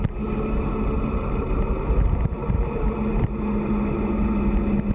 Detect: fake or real real